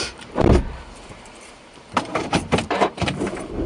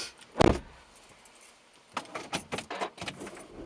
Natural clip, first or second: second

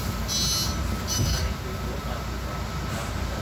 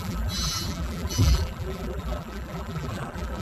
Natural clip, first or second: first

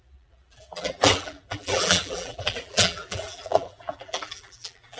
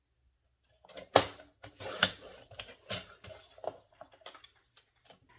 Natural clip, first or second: second